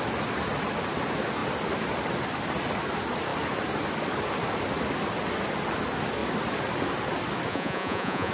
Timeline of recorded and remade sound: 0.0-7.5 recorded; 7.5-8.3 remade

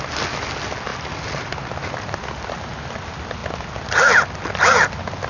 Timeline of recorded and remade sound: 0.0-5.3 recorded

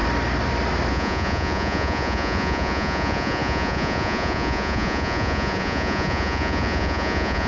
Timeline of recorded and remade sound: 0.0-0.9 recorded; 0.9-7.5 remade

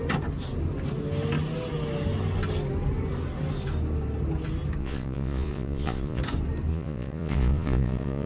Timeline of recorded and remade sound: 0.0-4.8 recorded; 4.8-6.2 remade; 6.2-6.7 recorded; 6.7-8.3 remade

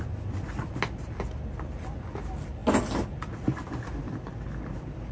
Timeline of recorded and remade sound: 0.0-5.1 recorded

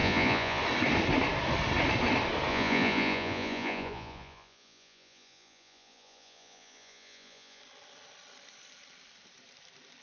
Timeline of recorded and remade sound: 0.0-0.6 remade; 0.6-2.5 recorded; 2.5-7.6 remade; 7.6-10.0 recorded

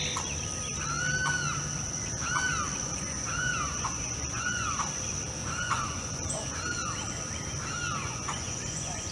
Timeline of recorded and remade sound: 0.0-2.8 recorded; 2.8-4.7 remade; 4.7-5.4 recorded; 5.4-6.9 remade; 6.9-8.0 recorded; 8.0-9.1 remade